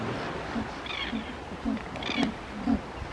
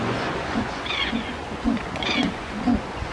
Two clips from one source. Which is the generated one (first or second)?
second